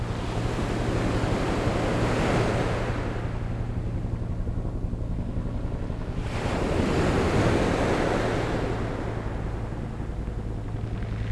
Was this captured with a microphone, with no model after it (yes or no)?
yes